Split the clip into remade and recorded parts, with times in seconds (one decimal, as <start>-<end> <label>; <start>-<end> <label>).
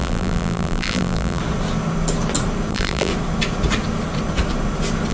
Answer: 0.0-1.4 remade; 1.4-2.7 recorded; 2.7-3.1 remade; 3.1-5.1 recorded